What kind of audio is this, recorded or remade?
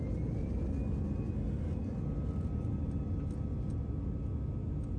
recorded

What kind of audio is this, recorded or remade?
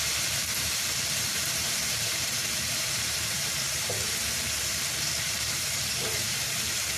remade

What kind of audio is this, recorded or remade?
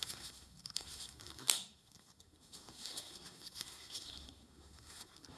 remade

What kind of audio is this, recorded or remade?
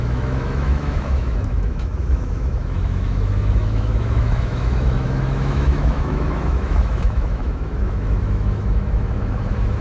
remade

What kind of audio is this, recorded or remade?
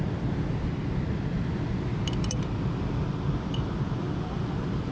recorded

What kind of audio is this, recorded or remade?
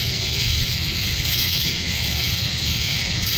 remade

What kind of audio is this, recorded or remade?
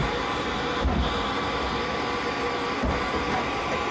recorded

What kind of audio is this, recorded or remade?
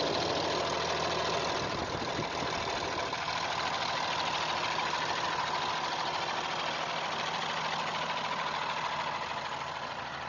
recorded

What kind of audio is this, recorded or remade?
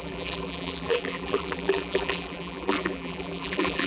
remade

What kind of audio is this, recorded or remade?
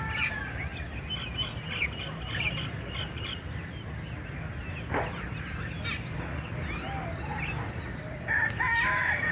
recorded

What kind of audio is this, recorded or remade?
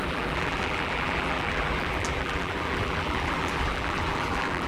remade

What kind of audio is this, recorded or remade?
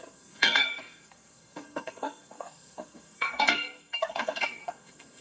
remade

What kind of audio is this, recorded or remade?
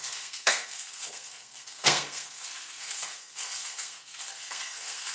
remade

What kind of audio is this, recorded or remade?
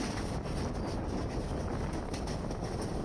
recorded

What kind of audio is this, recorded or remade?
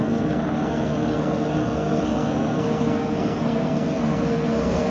remade